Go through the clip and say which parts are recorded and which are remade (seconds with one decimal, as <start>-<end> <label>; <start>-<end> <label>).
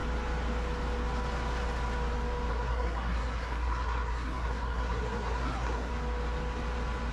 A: 0.0-2.5 recorded; 2.5-5.9 remade; 5.9-7.1 recorded